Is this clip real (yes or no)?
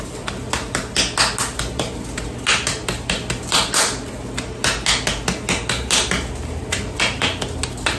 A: yes